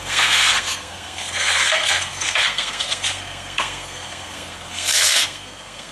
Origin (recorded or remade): remade